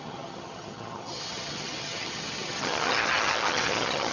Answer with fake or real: fake